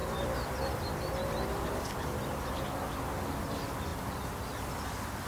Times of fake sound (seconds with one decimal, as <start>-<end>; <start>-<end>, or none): none